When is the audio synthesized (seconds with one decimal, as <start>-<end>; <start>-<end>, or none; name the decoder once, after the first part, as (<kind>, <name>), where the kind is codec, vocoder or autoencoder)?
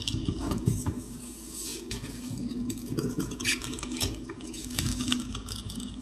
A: 0.0-6.0 (codec, DAC)